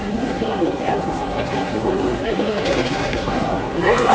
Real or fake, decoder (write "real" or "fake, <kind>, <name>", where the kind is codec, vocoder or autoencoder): fake, codec, SNAC